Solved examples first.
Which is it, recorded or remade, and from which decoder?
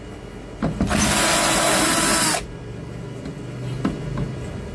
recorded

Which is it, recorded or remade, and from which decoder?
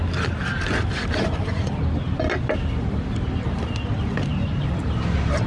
recorded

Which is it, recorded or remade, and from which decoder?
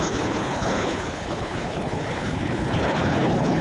remade, codec, HILCodec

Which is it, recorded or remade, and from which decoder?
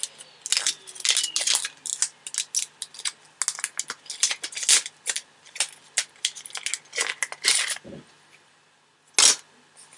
recorded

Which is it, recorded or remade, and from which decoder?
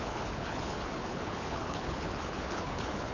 remade, codec, HILCodec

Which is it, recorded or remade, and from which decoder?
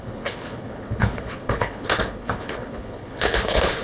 remade, codec, HILCodec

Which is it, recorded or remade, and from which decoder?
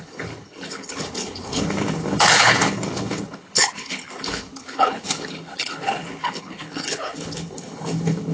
remade, codec, HILCodec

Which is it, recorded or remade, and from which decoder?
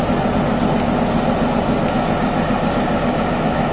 recorded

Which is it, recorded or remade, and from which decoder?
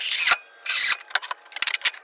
recorded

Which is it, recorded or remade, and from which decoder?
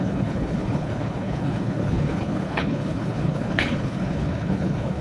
remade, codec, HILCodec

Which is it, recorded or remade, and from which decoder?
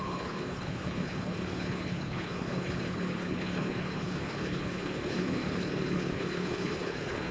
remade, codec, HILCodec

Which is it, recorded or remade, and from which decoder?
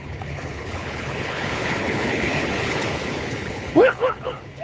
remade, codec, HILCodec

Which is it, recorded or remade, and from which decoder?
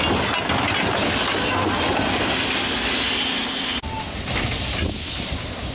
recorded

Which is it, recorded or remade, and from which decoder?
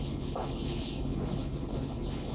remade, codec, HILCodec